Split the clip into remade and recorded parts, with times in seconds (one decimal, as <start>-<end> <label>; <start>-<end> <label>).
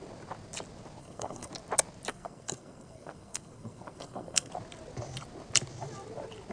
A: 0.0-1.0 recorded; 1.0-1.5 remade; 1.5-2.1 recorded; 2.1-4.5 remade; 4.5-6.5 recorded